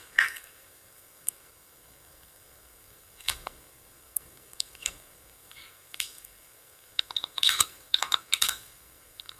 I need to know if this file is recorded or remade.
remade